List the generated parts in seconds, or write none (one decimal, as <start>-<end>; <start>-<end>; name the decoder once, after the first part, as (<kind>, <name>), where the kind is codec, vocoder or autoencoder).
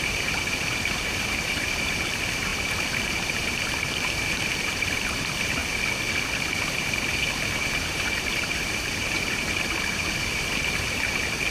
0.0-5.6 (vocoder, BigVGAN v2); 6.5-11.5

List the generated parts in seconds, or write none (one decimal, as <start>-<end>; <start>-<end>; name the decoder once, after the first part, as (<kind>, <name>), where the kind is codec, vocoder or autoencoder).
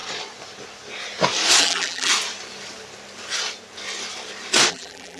1.6-2.1 (vocoder, BigVGAN v2); 4.7-5.2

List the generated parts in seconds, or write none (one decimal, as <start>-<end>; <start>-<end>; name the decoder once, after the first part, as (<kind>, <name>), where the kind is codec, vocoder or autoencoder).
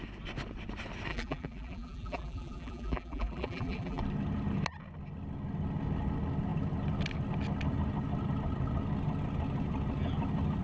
1.1-4.0 (vocoder, BigVGAN v2)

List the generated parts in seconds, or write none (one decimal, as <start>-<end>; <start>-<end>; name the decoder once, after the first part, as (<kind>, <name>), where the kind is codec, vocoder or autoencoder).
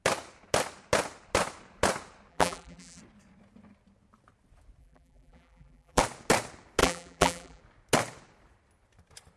2.3-3.0 (vocoder, BigVGAN v2); 4.8-6.0; 6.8-7.6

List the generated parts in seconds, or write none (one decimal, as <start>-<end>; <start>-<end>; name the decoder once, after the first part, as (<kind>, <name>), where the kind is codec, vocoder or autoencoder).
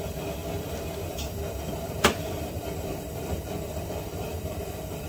0.0-0.4 (vocoder, BigVGAN v2); 1.9-5.1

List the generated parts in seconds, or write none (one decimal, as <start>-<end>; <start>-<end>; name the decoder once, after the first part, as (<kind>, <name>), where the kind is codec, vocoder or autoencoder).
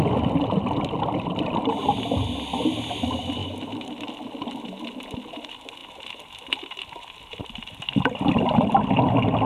none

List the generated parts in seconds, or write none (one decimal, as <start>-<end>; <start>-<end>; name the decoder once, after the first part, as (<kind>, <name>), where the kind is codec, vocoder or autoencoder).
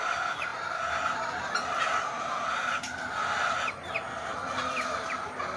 0.0-0.5 (vocoder, BigVGAN v2); 2.5-3.2; 3.7-5.6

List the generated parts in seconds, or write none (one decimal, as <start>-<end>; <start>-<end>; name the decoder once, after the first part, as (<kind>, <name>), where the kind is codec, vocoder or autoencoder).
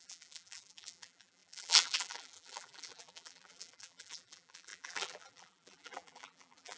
0.0-6.8 (vocoder, BigVGAN v2)